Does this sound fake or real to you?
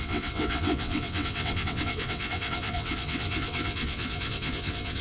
fake